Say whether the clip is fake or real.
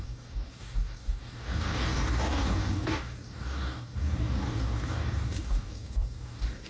fake